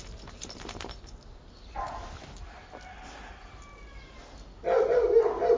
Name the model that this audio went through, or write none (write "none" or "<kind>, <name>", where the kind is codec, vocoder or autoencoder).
none